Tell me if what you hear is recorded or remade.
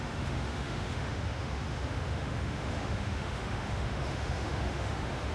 remade